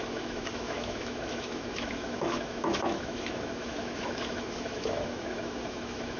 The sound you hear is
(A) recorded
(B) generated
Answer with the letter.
B